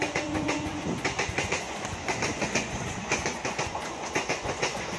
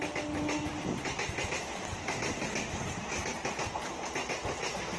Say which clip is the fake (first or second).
first